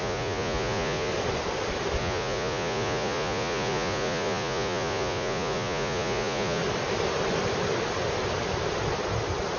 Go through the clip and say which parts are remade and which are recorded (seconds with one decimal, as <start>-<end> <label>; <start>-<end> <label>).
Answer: 0.0-1.1 remade; 1.1-2.0 recorded; 2.0-6.6 remade; 6.6-9.6 recorded